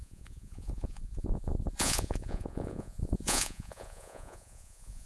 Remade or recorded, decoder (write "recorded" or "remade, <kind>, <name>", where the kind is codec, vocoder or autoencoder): remade, vocoder, Vocos